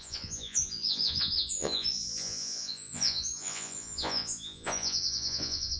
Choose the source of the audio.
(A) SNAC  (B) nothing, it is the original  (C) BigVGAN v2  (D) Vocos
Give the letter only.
D